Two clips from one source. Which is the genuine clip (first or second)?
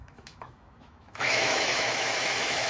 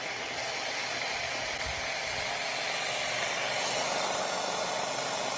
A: second